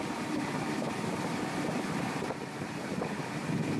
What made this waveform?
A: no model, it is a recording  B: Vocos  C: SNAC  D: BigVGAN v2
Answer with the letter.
D